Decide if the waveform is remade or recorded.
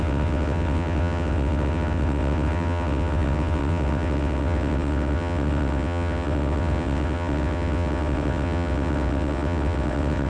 remade